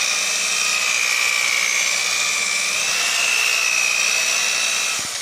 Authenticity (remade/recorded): recorded